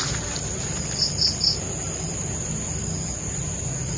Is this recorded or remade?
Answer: recorded